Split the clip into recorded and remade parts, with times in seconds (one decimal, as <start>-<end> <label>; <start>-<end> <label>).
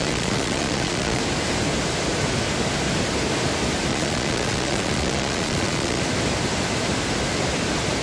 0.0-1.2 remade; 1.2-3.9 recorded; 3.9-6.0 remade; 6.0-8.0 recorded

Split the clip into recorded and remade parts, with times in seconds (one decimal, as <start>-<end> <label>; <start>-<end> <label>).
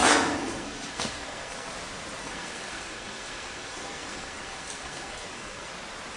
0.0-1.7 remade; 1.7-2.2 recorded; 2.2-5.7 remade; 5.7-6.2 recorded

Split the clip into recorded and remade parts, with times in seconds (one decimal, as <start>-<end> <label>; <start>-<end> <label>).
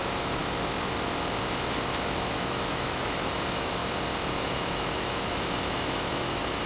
0.0-0.4 remade; 0.4-2.3 recorded; 2.3-3.8 remade; 3.8-4.4 recorded; 4.4-6.7 remade